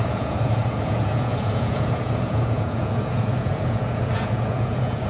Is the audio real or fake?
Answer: fake